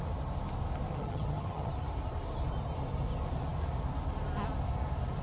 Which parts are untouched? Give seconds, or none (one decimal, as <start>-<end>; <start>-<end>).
0.0-0.9; 1.7-5.2